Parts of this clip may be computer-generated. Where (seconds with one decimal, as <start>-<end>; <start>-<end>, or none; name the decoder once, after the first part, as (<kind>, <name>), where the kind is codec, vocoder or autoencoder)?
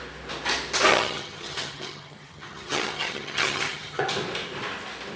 0.9-4.0 (vocoder, HiFi-GAN)